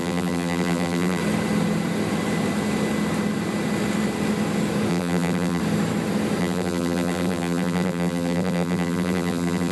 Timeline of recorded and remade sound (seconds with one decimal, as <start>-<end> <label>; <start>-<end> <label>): 0.0-1.2 remade; 1.2-4.9 recorded; 4.9-5.6 remade; 5.6-6.4 recorded; 6.4-9.7 remade